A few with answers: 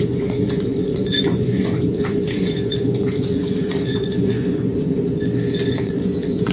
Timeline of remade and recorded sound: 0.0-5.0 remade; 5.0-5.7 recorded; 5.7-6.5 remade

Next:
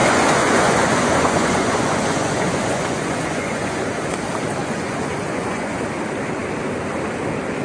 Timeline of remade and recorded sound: 0.0-3.9 remade; 3.9-4.6 recorded; 4.6-5.8 remade; 5.8-7.6 recorded

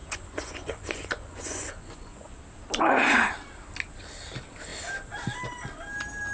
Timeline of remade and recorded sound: 0.0-2.4 remade; 2.4-6.3 recorded

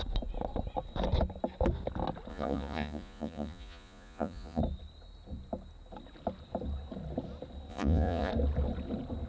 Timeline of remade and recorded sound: 0.0-2.3 recorded; 2.3-4.6 remade; 4.6-7.7 recorded; 7.7-8.3 remade; 8.3-9.3 recorded

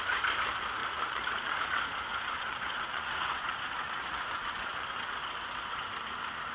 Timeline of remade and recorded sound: 0.0-0.8 recorded; 0.8-1.6 remade; 1.6-2.1 recorded; 2.1-4.9 remade; 4.9-6.5 recorded

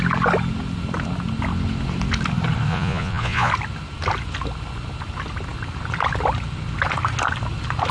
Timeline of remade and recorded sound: 0.0-2.7 recorded; 2.7-3.5 remade; 3.5-7.9 recorded

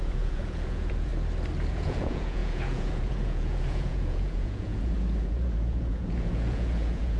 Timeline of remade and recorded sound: 0.0-1.1 remade; 1.1-1.7 recorded; 1.7-7.2 remade

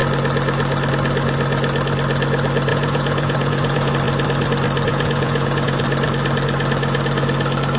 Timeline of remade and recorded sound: 0.0-2.7 recorded; 2.7-3.9 remade; 3.9-4.9 recorded; 4.9-5.8 remade; 5.8-7.8 recorded